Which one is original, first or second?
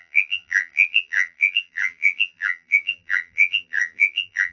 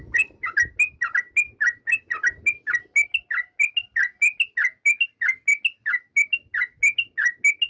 second